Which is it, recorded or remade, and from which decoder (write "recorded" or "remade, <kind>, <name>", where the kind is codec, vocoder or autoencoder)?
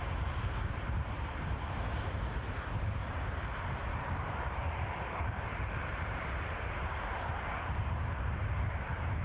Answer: remade, vocoder, BigVGAN v2